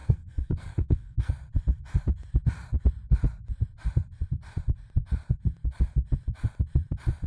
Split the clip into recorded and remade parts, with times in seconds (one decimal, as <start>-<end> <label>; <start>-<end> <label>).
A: 0.0-1.3 remade; 1.3-7.3 recorded